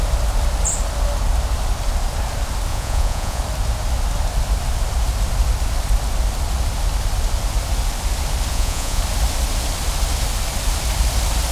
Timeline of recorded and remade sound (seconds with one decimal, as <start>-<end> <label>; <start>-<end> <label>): 0.0-2.7 recorded; 2.7-3.4 remade; 3.4-8.5 recorded; 8.5-9.0 remade; 9.0-11.5 recorded